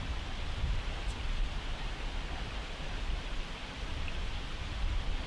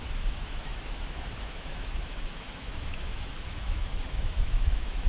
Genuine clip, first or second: first